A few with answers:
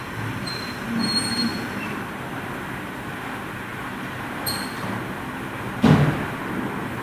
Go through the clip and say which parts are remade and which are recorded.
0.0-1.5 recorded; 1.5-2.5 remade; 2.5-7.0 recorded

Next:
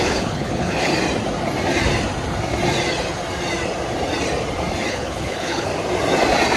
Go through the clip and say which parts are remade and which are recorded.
0.0-0.9 remade; 0.9-4.9 recorded; 4.9-5.7 remade; 5.7-6.6 recorded

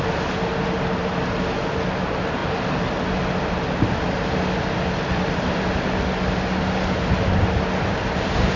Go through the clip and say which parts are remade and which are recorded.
0.0-8.6 recorded

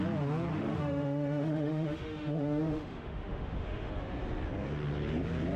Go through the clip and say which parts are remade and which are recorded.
0.0-0.5 recorded; 0.5-3.9 remade; 3.9-5.6 recorded

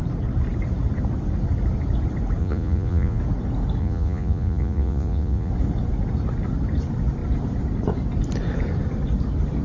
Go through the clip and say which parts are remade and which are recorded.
0.0-2.4 recorded; 2.4-3.2 remade; 3.2-3.8 recorded; 3.8-5.5 remade; 5.5-9.6 recorded

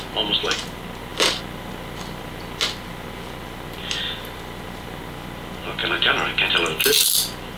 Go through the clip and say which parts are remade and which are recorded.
0.0-5.8 recorded; 5.8-6.5 remade; 6.5-7.6 recorded

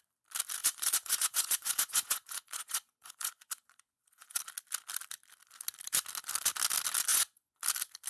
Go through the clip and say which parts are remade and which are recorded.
0.0-0.6 recorded; 0.6-4.4 remade; 4.4-7.1 recorded; 7.1-7.6 remade; 7.6-8.1 recorded

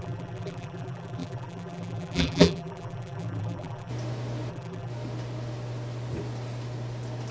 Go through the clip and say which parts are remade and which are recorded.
0.0-3.9 remade; 3.9-4.5 recorded; 4.5-4.9 remade; 4.9-7.3 recorded